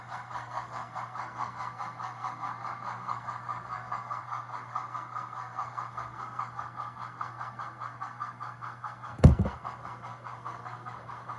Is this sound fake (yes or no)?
yes